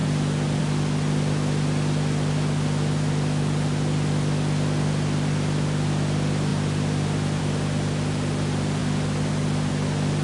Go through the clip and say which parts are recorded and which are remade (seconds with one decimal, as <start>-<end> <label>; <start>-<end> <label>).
0.0-10.2 recorded